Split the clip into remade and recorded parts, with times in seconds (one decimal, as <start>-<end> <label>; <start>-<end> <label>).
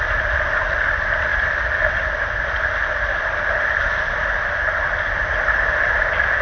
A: 0.0-6.4 recorded